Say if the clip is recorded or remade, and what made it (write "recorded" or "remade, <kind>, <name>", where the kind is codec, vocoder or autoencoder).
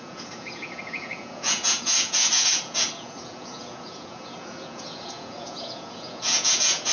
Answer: remade, vocoder, Vocos